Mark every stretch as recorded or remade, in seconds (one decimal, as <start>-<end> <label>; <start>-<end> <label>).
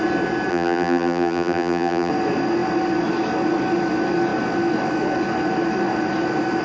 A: 0.0-0.5 recorded; 0.5-2.1 remade; 2.1-6.6 recorded